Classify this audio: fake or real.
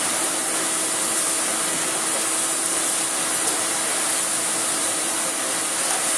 real